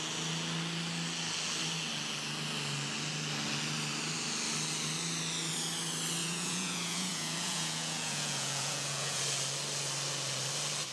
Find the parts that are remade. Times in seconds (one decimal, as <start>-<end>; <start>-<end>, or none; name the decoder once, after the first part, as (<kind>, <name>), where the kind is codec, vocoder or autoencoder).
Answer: 6.2-9.2 (vocoder, Vocos)